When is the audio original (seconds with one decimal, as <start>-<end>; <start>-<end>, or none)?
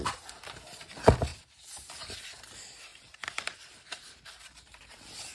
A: 0.0-1.3; 2.1-2.9; 4.8-5.3